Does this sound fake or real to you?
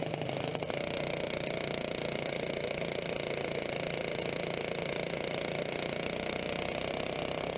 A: real